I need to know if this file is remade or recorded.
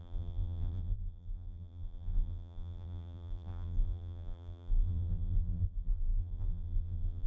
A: remade